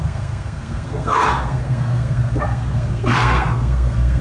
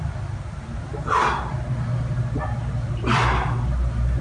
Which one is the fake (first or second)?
first